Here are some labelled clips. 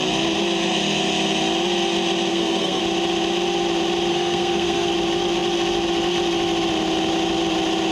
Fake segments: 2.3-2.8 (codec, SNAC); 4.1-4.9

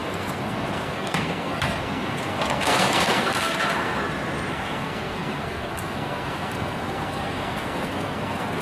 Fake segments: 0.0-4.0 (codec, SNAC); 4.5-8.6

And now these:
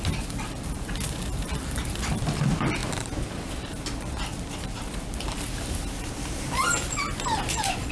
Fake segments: 0.0-7.9 (vocoder, BigVGAN v2)